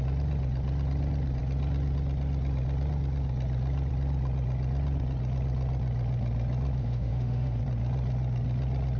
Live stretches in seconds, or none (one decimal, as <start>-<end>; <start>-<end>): 0.0-6.8; 7.6-9.0